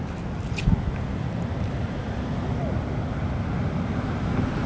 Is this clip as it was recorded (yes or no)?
yes